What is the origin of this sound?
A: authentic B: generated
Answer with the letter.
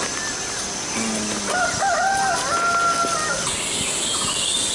A